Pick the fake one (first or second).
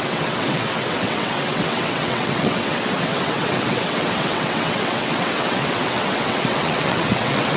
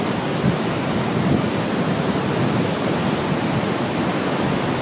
first